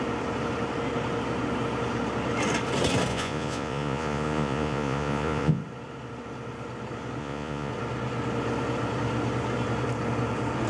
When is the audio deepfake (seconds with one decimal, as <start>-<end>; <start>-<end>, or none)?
3.1-5.6; 7.2-7.7